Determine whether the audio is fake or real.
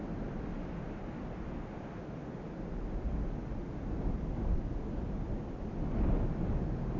real